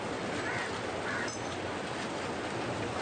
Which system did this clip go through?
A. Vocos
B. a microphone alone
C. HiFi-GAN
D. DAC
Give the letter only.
B